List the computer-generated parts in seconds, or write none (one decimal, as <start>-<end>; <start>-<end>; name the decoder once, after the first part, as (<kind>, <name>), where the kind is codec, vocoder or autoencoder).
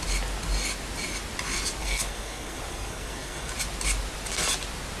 1.8-3.5 (codec, SNAC)